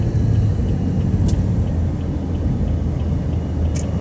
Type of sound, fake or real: real